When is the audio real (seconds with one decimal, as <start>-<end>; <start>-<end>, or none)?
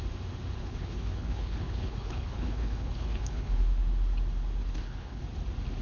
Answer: 0.0-0.6; 3.5-4.6; 5.2-5.8